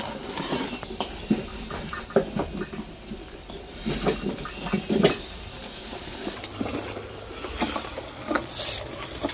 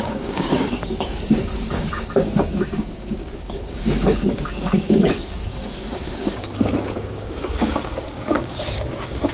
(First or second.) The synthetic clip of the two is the second